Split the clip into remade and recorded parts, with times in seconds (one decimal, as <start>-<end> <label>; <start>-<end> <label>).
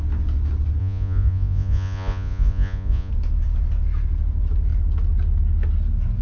0.0-0.8 recorded; 0.8-3.1 remade; 3.1-6.2 recorded